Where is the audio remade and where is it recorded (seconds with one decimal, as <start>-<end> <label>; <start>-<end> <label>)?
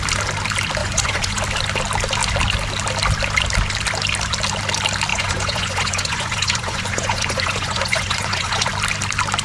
0.0-0.8 recorded; 0.8-1.4 remade; 1.4-5.1 recorded; 5.1-8.7 remade; 8.7-9.4 recorded